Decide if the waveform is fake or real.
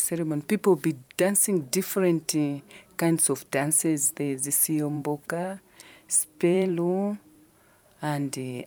fake